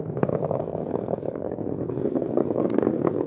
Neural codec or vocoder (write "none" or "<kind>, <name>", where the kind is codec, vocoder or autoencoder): codec, SNAC